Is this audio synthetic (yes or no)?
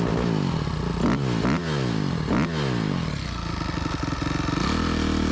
no